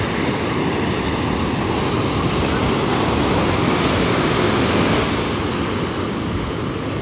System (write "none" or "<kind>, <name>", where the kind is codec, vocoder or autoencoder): none